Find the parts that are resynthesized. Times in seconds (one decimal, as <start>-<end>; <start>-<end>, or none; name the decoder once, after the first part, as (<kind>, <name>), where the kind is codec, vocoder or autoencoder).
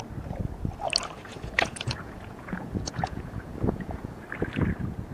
1.3-4.2 (vocoder, Vocos)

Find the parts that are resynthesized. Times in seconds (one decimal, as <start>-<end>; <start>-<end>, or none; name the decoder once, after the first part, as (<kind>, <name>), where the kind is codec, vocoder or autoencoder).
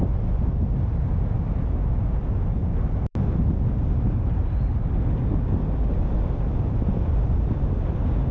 none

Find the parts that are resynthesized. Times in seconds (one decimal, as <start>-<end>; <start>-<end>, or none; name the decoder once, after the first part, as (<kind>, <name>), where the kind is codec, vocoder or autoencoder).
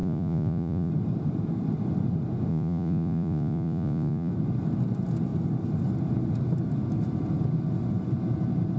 0.0-0.9 (vocoder, Vocos); 2.5-4.3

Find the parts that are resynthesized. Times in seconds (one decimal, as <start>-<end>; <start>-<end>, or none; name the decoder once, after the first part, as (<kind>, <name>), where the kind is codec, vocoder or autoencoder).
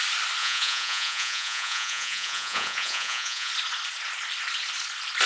0.4-3.5 (vocoder, Vocos)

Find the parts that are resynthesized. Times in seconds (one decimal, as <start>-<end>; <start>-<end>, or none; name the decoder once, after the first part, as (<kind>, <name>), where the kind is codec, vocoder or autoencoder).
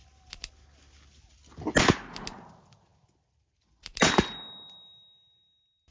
none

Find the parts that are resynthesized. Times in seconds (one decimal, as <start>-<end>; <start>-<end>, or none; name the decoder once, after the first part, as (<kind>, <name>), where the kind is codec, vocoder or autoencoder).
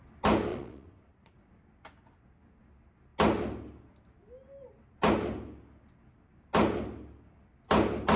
0.5-1.5 (vocoder, Vocos)